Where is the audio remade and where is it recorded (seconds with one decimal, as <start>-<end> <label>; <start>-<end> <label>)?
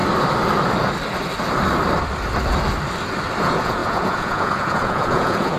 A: 0.0-3.4 recorded; 3.4-5.6 remade